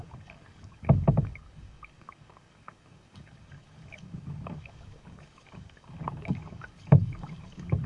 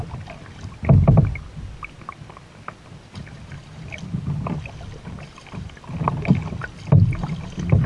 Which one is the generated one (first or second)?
first